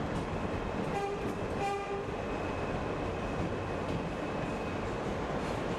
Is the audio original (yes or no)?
yes